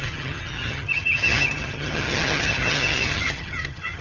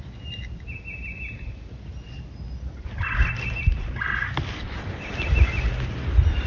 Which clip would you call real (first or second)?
second